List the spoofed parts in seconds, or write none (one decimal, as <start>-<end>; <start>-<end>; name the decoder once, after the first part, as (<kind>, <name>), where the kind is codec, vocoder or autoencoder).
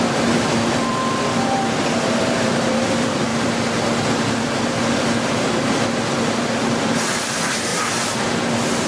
0.0-7.7 (vocoder, BigVGAN v2)